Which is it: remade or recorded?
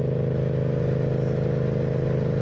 recorded